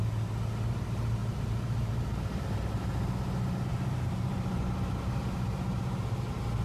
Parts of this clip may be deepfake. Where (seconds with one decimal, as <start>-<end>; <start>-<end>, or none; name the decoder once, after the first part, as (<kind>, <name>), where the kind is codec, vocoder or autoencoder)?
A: 1.2-2.8 (vocoder, BigVGAN v2); 3.7-4.6